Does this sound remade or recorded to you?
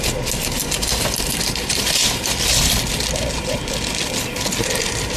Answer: recorded